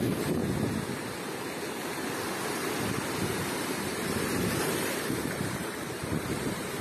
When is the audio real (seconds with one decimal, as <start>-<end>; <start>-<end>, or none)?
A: 0.4-2.9